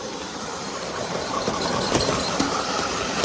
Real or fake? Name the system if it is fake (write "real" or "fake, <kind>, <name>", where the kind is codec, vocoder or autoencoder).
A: fake, vocoder, BigVGAN v2